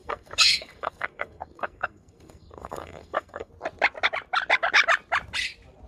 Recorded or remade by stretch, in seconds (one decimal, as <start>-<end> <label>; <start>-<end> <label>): 0.0-3.5 remade; 3.5-5.9 recorded